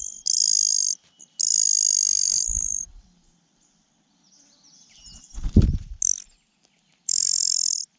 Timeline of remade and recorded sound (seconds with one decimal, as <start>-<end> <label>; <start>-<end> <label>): 0.0-8.0 recorded